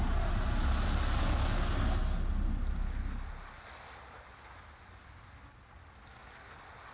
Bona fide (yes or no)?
yes